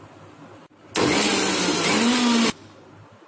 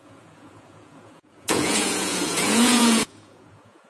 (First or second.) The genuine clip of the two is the first